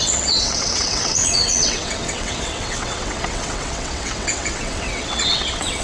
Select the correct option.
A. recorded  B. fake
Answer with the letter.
B